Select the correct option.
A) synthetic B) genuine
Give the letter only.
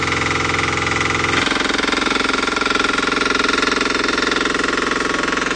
B